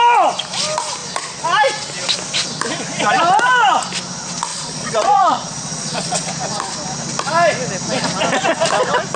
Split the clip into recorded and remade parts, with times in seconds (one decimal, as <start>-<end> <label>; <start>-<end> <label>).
0.0-4.5 recorded; 4.5-6.3 remade; 6.3-9.2 recorded